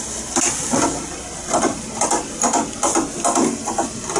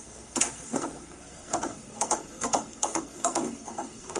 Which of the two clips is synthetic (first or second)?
second